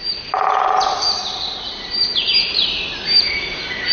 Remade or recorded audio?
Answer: remade